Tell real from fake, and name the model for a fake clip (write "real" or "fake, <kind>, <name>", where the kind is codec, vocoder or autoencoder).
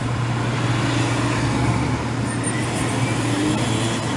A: real